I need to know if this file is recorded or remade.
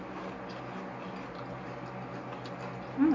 recorded